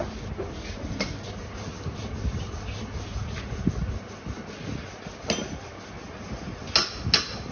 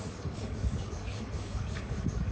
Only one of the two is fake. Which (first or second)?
second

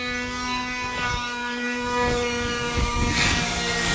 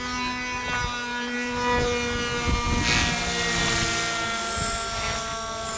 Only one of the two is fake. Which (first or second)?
first